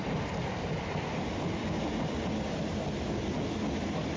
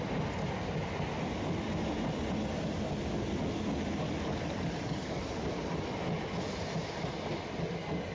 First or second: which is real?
second